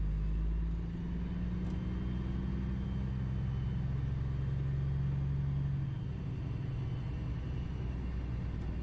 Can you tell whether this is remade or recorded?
recorded